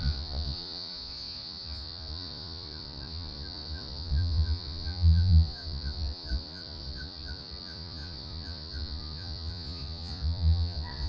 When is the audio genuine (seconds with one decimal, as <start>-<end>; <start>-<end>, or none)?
none